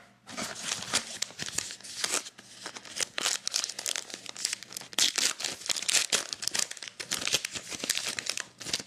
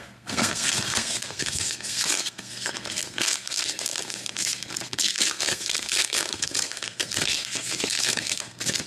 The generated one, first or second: second